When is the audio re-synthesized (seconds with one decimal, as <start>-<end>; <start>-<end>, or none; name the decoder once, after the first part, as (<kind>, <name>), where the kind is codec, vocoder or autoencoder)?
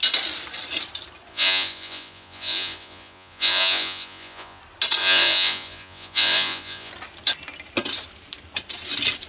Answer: 1.3-4.6 (vocoder, Vocos); 5.0-6.9